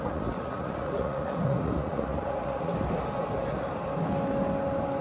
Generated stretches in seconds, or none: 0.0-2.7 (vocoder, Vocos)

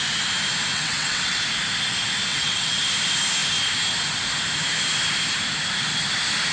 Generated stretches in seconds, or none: 0.7-1.4 (vocoder, WaveNeXt); 2.3-2.8

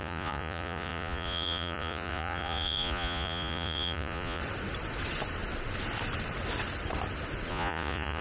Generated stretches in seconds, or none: 0.0-4.4 (vocoder, Vocos); 7.5-8.2